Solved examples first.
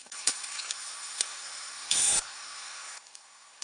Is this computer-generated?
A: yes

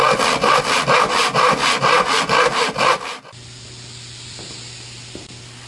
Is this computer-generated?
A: no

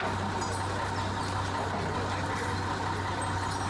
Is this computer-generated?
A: no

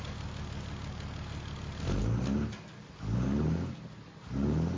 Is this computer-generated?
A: no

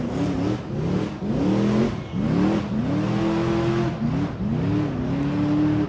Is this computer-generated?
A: no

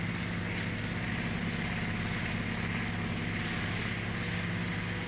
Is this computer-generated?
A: no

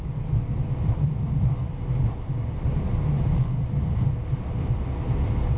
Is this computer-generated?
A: no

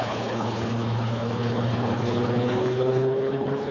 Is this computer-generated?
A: yes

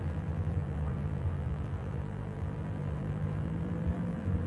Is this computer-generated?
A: yes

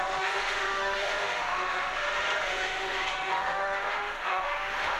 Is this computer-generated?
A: yes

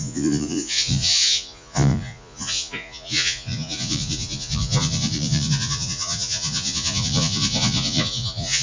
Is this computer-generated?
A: yes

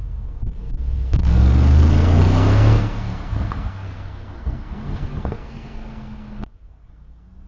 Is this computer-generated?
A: yes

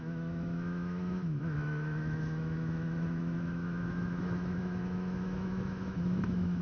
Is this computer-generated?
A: yes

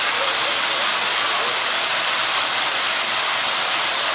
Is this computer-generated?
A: no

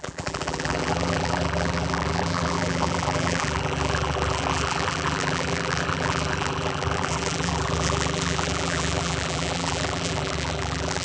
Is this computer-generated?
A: yes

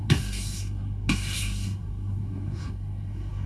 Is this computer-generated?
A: yes